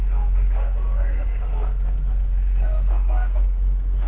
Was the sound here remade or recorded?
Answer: remade